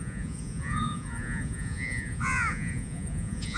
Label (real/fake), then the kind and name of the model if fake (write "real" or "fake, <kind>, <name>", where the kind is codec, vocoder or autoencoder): fake, vocoder, Vocos